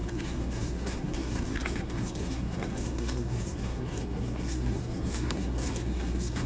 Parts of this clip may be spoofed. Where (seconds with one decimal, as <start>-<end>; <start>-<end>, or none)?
0.0-6.5